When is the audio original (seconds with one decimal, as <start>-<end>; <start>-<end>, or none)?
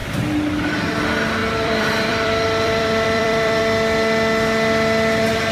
0.0-1.4; 3.6-5.5